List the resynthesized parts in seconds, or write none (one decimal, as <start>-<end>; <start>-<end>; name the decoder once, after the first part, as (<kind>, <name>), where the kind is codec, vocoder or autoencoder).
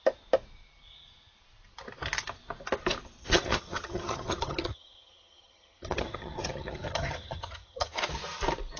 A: 3.2-8.0 (vocoder, HiFi-GAN)